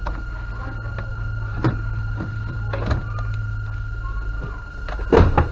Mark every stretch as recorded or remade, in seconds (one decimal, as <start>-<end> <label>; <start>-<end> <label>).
0.0-1.1 recorded; 1.1-5.5 remade